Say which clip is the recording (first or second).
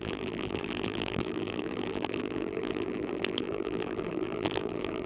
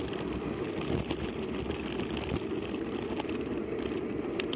second